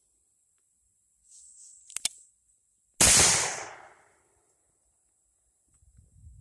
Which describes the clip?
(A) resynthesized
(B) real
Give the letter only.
B